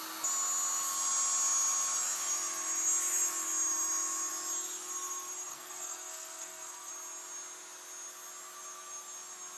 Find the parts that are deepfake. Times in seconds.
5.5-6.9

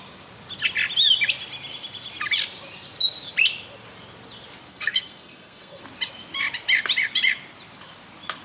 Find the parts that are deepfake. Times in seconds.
4.7-5.8

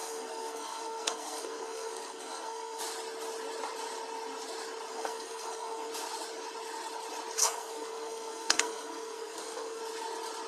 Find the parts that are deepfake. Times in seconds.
0.0-2.8; 4.9-5.9; 7.4-9.8

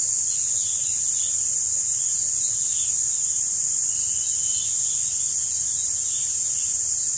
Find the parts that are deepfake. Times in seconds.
none

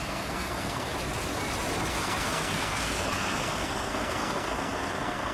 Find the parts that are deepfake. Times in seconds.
0.0-0.9; 1.9-5.3

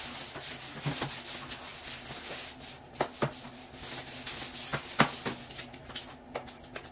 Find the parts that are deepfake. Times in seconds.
none